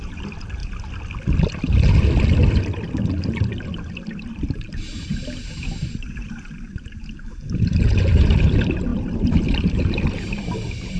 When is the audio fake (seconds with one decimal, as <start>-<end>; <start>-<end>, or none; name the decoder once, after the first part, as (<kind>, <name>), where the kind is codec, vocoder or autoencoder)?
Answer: 0.0-0.6 (vocoder, BigVGAN v2); 3.9-11.0